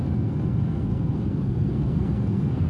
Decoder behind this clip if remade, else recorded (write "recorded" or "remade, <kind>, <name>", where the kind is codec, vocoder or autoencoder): remade, codec, SNAC